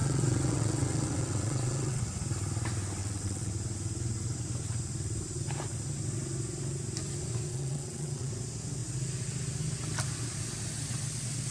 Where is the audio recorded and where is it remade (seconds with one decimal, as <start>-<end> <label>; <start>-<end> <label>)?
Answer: 0.0-2.0 remade; 2.0-3.0 recorded; 3.0-3.5 remade; 3.5-7.5 recorded; 7.5-8.3 remade; 8.3-11.5 recorded